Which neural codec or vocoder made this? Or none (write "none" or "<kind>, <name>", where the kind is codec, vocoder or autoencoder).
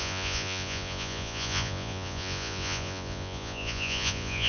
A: vocoder, Vocos